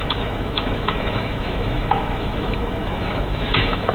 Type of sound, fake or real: fake